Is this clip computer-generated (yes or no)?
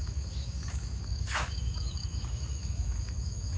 yes